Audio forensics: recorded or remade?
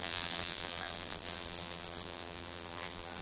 remade